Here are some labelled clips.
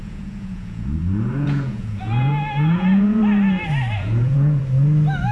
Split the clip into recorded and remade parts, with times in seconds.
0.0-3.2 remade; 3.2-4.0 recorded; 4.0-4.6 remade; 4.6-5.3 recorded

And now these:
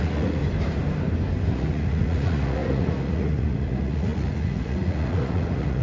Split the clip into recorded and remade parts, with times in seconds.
0.0-0.4 remade; 0.4-1.5 recorded; 1.5-5.8 remade

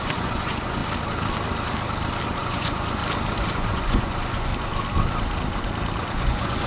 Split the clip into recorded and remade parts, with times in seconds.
0.0-0.8 remade; 0.8-2.4 recorded; 2.4-3.0 remade; 3.0-3.5 recorded; 3.5-4.5 remade; 4.5-6.2 recorded; 6.2-6.7 remade